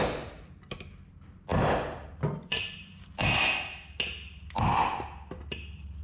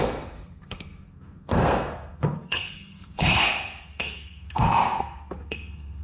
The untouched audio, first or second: first